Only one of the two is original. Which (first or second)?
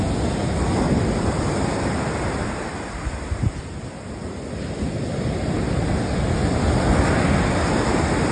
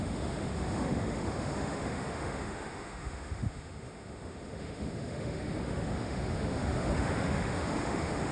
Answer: first